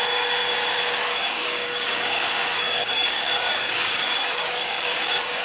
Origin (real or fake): fake